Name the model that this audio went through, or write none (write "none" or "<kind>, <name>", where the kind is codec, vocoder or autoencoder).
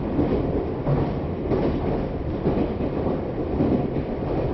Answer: none